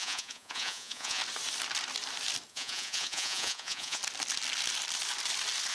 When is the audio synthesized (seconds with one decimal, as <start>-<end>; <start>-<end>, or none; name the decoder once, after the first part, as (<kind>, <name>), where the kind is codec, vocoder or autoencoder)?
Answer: 0.0-1.2 (vocoder, Vocos); 2.5-4.0